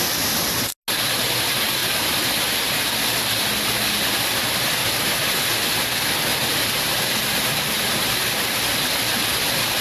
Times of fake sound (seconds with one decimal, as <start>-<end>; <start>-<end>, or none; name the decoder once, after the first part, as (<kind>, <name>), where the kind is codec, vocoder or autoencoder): 1.8-2.3 (vocoder, BigVGAN v2); 6.3-8.1